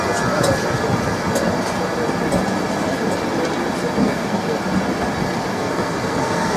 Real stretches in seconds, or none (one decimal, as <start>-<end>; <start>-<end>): 0.0-4.0; 4.6-5.5